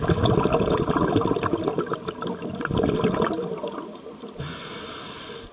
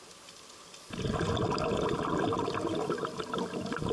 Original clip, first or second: second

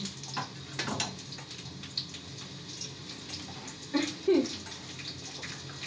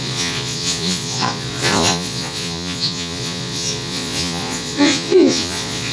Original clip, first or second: first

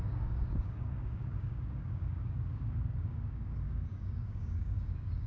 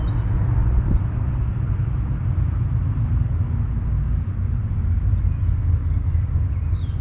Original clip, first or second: second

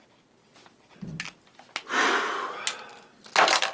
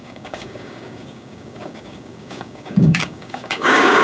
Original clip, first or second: first